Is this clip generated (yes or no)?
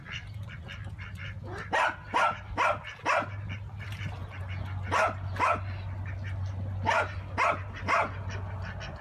no